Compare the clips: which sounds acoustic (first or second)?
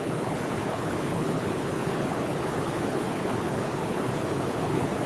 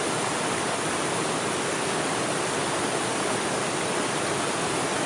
second